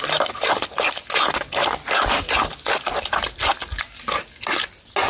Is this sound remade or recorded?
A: recorded